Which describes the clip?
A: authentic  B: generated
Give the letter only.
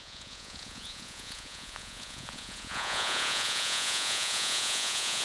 B